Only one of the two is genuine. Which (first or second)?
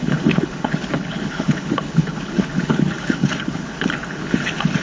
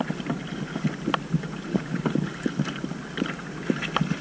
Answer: second